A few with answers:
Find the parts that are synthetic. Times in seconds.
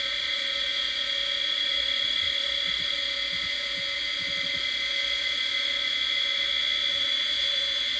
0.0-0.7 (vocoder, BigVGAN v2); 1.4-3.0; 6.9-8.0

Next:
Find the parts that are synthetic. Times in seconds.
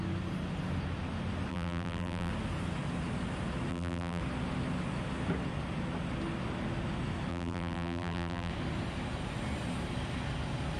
1.5-2.3 (vocoder, BigVGAN v2); 3.7-4.2; 7.3-8.5